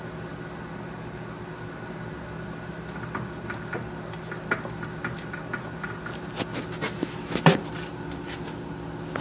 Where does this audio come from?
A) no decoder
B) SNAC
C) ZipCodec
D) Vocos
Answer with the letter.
A